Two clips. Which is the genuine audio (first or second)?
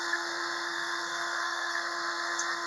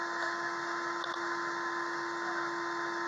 second